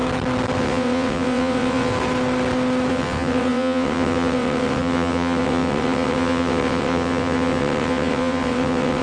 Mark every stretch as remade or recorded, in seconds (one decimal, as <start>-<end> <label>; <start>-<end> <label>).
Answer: 0.0-0.6 recorded; 0.6-1.9 remade; 1.9-2.9 recorded; 2.9-9.0 remade